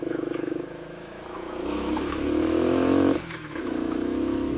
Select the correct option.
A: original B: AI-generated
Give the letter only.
B